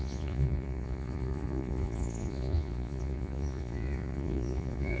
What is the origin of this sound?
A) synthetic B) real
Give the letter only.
A